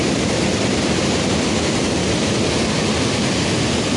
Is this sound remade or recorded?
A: recorded